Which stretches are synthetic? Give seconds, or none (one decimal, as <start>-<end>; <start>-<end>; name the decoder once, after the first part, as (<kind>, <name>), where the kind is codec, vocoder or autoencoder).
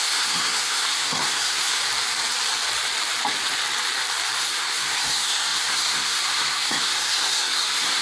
0.0-1.8 (codec, SNAC); 4.4-8.0